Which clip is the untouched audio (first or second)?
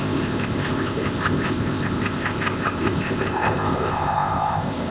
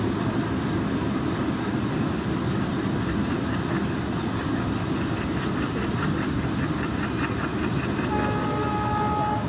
second